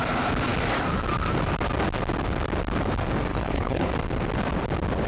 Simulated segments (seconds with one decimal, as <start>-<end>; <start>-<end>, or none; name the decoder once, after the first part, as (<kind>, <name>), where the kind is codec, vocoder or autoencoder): 3.3-3.9 (codec, HILCodec)

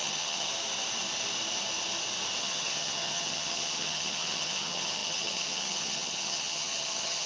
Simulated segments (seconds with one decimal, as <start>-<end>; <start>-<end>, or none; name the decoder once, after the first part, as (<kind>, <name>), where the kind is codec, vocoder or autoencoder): 0.0-0.5 (vocoder, HiFi-GAN); 2.4-7.3

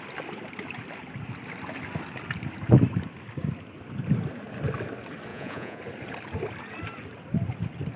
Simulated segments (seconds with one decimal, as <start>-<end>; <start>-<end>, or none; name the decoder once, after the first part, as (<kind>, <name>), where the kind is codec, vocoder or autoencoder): 5.3-5.8 (vocoder, Vocos)

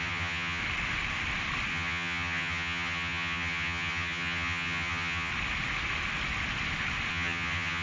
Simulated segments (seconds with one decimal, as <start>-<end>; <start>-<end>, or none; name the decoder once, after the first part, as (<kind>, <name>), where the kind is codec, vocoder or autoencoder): 0.0-0.6 (vocoder, HiFi-GAN); 1.7-5.3; 7.1-7.8